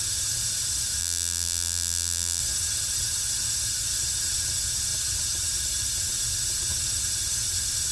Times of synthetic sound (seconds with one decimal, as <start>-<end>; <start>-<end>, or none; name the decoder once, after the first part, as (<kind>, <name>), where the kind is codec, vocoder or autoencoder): 1.0-2.4 (vocoder, BigVGAN v2)